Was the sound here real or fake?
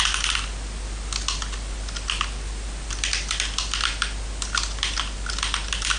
real